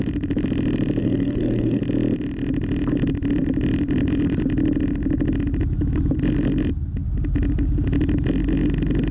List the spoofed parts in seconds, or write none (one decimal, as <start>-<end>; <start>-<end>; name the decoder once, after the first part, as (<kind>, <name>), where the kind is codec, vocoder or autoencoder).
1.0-1.8 (codec, SNAC)